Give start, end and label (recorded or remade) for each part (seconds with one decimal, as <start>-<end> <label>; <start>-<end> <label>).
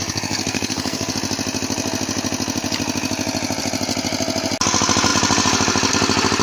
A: 0.0-1.1 remade; 1.1-6.4 recorded